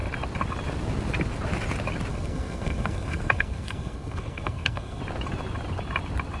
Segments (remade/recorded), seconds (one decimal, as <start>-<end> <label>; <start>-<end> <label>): 0.0-2.1 recorded; 2.1-5.0 remade; 5.0-6.4 recorded